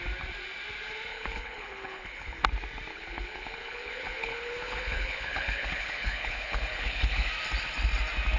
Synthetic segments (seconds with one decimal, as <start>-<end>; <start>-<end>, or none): 1.1-2.4; 2.9-7.3